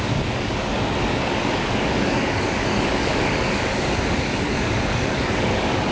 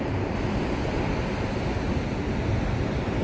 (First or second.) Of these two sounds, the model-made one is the first